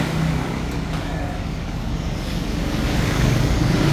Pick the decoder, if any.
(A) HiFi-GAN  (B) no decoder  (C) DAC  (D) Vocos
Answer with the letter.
C